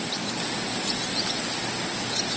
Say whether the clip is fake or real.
real